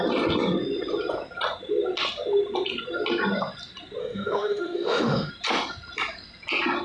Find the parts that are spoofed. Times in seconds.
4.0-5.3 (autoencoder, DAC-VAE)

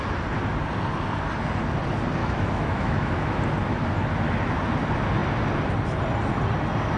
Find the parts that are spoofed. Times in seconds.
2.2-3.4 (autoencoder, DAC-VAE)

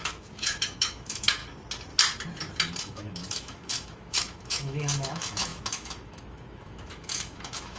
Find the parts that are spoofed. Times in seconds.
0.0-1.4 (autoencoder, DAC-VAE); 2.8-7.8

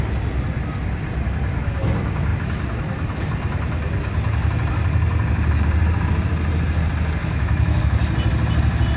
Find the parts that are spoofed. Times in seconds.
7.2-7.8 (autoencoder, DAC-VAE)

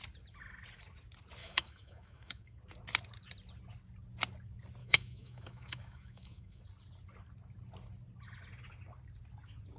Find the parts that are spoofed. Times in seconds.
1.4-2.6 (autoencoder, DAC-VAE); 4.8-6.6

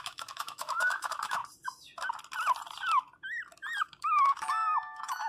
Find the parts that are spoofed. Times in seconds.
0.0-1.4 (autoencoder, DAC-VAE); 3.8-5.3